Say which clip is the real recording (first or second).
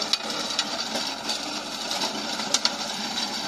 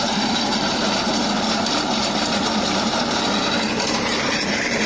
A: first